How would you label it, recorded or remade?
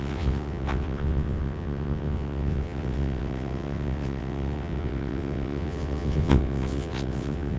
remade